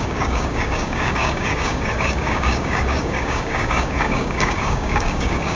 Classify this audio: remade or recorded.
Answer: remade